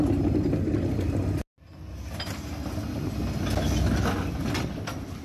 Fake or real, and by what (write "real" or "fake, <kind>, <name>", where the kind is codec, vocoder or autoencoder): real